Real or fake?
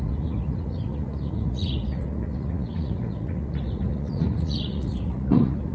fake